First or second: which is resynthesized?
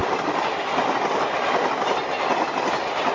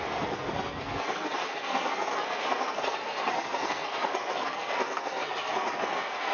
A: second